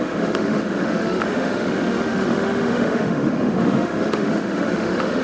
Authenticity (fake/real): fake